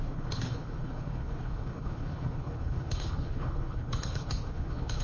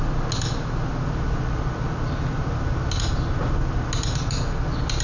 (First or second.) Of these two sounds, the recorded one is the second